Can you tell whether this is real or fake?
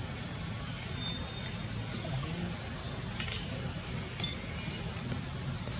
real